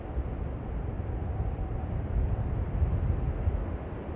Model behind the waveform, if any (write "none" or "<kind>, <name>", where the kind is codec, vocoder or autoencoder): none